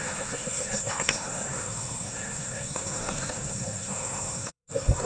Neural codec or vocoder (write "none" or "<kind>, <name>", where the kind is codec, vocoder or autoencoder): codec, SNAC